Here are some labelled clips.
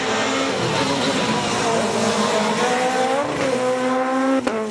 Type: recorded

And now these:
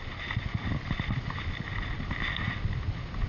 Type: recorded